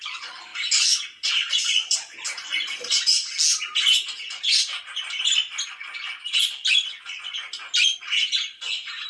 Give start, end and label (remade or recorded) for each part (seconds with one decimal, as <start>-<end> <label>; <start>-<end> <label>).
0.0-9.1 recorded